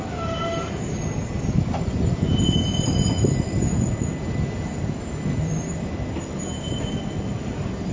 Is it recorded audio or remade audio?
recorded